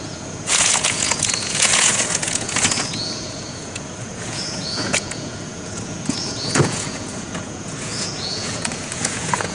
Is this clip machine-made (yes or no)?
yes